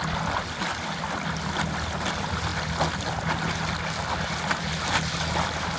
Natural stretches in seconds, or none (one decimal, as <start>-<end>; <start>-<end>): 0.0-5.8